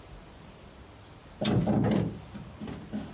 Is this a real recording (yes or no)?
yes